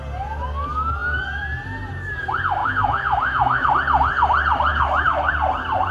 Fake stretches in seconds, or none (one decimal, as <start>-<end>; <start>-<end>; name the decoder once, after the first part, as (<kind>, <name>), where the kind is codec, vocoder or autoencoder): 2.6-3.7 (autoencoder, DAC-VAE); 4.7-5.3